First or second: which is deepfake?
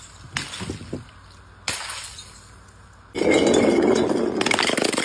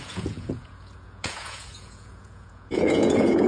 second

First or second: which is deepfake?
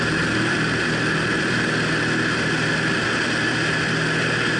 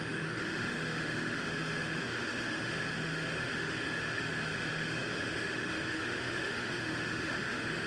second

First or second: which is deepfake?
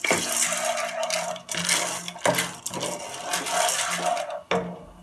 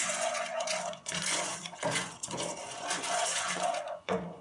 second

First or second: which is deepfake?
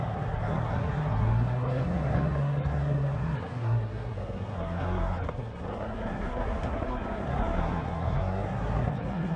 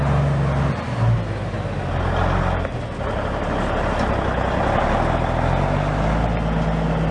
first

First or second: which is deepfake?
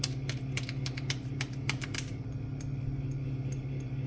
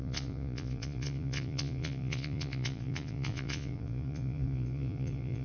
second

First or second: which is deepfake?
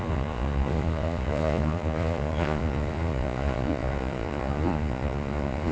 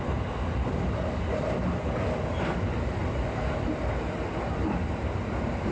first